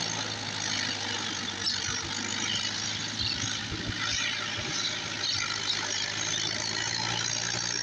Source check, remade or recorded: recorded